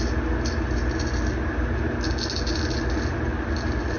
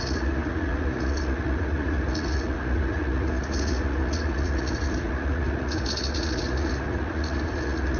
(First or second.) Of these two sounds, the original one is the first